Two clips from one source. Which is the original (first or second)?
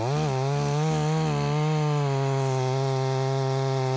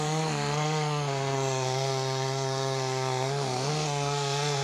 first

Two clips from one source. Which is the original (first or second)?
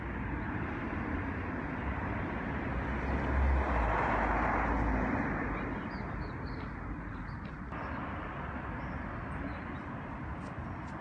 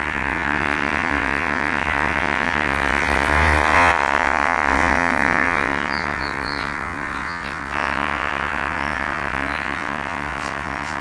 first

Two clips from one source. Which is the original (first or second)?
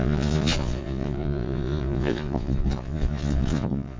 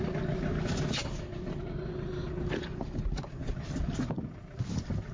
second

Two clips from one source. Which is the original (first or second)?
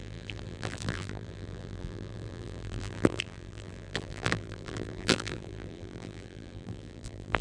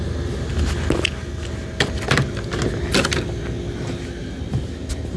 second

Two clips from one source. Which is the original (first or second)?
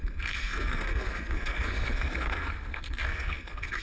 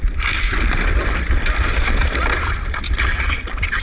second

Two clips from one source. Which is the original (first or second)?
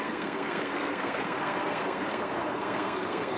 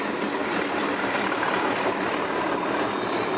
second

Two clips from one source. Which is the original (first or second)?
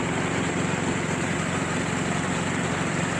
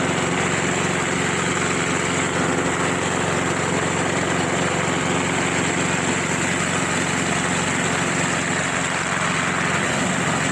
second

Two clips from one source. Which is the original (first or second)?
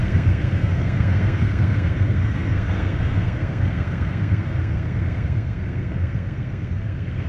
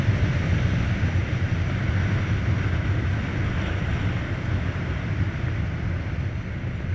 second